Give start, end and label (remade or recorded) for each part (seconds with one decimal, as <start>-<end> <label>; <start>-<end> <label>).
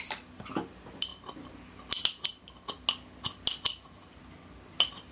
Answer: 0.0-5.1 recorded